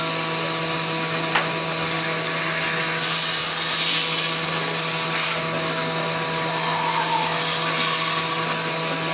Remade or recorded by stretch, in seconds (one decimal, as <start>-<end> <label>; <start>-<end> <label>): 0.0-9.1 recorded